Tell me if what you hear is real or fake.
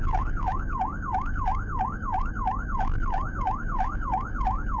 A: fake